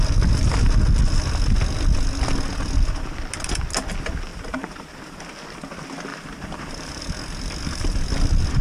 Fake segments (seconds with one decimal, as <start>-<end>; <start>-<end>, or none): 4.3-5.2; 6.1-7.0